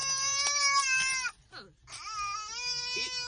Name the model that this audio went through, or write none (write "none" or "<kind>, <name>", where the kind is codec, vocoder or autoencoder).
none